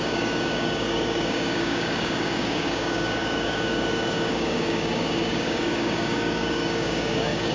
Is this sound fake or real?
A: fake